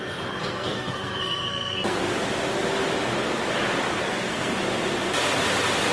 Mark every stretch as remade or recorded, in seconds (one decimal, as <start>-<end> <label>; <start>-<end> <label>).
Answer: 0.0-0.4 recorded; 0.4-2.1 remade; 2.1-3.9 recorded; 3.9-4.5 remade; 4.5-5.9 recorded